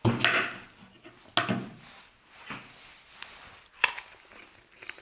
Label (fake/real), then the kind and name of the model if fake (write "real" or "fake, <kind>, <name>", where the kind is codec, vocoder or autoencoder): real